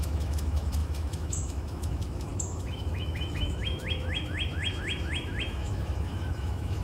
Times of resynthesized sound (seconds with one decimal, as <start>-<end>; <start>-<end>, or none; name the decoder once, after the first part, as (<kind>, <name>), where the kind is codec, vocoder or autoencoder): 0.0-6.8 (autoencoder, DAC-VAE)